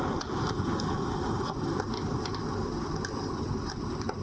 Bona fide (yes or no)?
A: yes